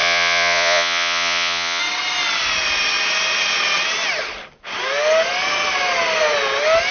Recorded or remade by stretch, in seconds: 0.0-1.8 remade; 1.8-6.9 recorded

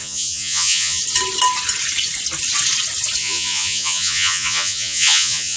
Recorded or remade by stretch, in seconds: 0.0-1.0 remade; 1.0-3.2 recorded; 3.2-5.6 remade

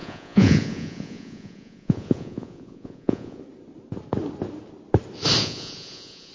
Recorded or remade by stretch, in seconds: 0.0-3.4 remade; 3.4-5.4 recorded; 5.4-6.3 remade

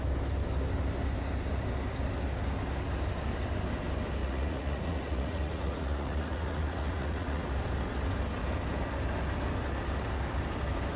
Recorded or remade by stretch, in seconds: 0.0-4.2 recorded; 4.2-7.5 remade; 7.5-11.0 recorded

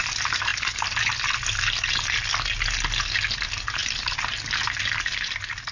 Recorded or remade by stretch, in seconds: 0.0-5.7 recorded

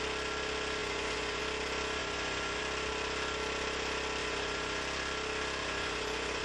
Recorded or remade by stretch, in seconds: 0.0-0.8 recorded; 0.8-1.4 remade; 1.4-2.0 recorded; 2.0-2.6 remade; 2.6-4.2 recorded; 4.2-4.8 remade; 4.8-5.6 recorded; 5.6-6.4 remade

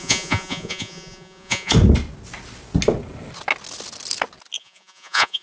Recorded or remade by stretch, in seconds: 0.0-1.7 remade; 1.7-4.6 recorded; 4.6-5.4 remade

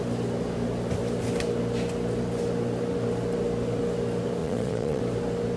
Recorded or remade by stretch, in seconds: 0.0-4.4 recorded; 4.4-5.0 remade; 5.0-5.6 recorded